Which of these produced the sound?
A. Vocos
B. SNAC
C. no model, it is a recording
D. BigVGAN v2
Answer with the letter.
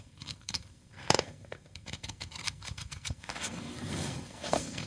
B